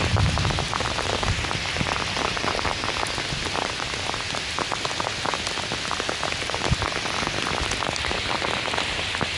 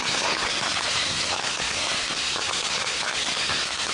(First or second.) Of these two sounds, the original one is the first